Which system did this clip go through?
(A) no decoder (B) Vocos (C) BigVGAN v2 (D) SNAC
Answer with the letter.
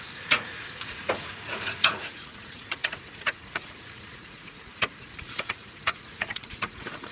B